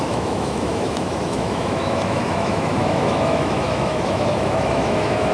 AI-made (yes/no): yes